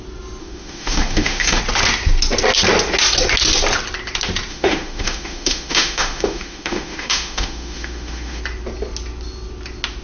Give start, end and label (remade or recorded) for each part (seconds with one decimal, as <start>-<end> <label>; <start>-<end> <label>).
0.0-0.4 recorded; 0.4-1.6 remade; 1.6-4.5 recorded; 4.5-8.4 remade; 8.4-10.0 recorded